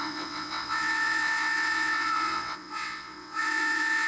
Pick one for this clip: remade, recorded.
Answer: remade